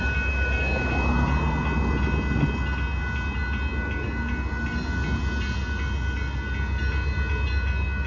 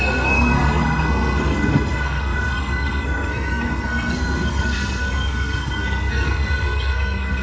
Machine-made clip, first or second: second